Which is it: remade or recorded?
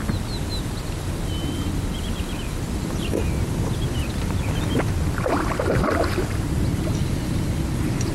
recorded